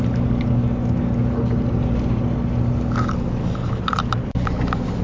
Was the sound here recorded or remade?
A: recorded